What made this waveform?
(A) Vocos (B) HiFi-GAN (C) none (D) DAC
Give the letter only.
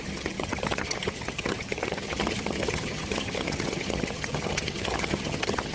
B